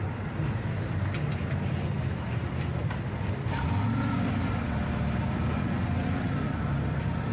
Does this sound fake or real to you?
real